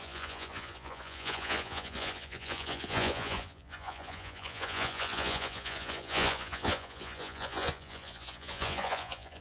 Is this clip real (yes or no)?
no